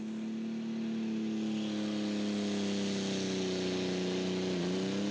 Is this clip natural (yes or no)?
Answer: yes